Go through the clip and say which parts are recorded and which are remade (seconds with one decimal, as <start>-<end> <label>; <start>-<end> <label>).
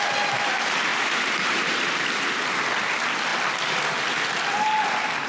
0.0-0.9 recorded; 0.9-2.5 remade; 2.5-5.3 recorded